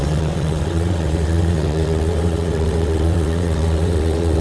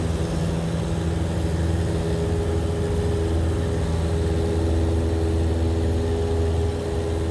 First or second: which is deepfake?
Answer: first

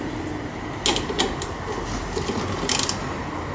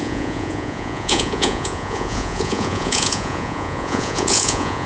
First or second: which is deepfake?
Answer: second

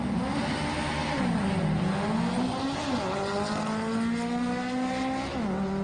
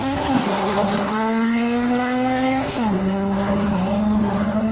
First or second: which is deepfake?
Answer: second